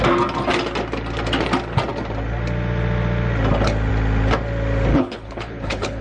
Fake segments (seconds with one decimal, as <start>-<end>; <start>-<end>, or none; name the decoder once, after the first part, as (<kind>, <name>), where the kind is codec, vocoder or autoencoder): 4.9-6.0 (codec, HILCodec)